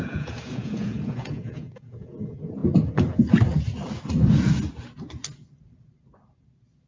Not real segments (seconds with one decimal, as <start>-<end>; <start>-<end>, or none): 0.0-2.6